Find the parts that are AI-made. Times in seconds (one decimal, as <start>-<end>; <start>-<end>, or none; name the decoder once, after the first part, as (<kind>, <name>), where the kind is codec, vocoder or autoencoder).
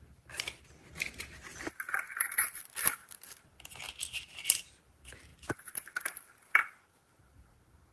0.0-7.9 (vocoder, BigVGAN v2)